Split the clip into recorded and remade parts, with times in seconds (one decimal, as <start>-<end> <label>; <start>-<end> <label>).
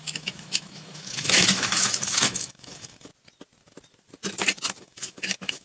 0.0-3.1 remade; 3.1-4.8 recorded; 4.8-5.6 remade